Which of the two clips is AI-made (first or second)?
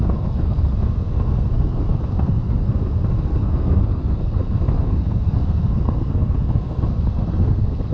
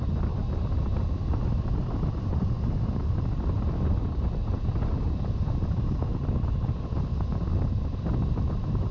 first